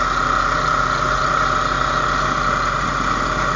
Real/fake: real